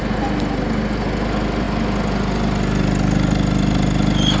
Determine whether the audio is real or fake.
real